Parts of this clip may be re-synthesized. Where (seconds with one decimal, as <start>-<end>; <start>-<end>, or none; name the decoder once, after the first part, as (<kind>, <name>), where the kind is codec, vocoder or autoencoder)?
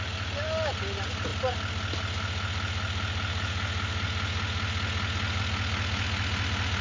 none